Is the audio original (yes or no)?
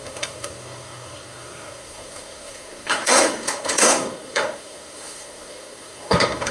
no